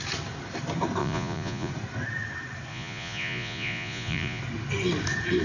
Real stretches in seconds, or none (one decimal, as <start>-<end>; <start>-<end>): 0.0-1.0; 1.7-2.7; 4.4-5.4